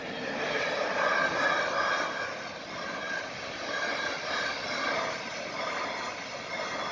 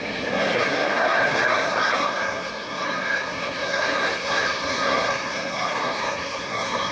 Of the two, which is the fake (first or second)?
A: second